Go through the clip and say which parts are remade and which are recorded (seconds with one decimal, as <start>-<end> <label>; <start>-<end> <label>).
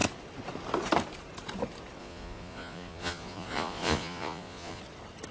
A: 0.0-2.0 recorded; 2.0-4.8 remade; 4.8-5.3 recorded